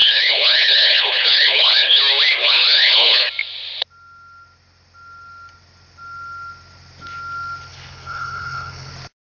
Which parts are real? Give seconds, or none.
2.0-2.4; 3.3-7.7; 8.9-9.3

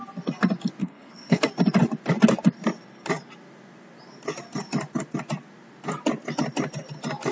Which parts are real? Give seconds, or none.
0.0-0.8; 1.4-7.3